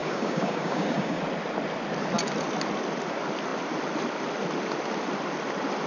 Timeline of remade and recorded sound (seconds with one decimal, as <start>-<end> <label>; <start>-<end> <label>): 0.0-1.2 remade; 1.2-5.9 recorded